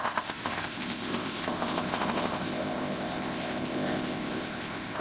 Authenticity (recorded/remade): remade